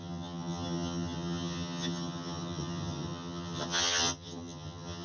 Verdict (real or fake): fake